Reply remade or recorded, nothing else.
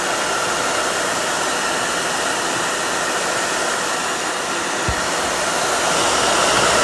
recorded